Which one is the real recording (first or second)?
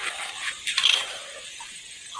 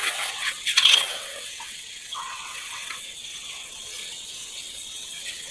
first